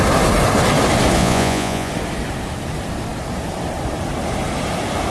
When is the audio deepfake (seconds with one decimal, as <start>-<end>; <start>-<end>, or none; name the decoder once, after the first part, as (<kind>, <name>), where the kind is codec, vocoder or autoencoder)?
1.2-1.9 (vocoder, Vocos)